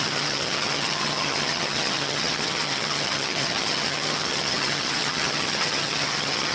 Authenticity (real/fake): fake